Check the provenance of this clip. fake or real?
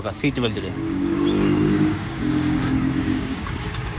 fake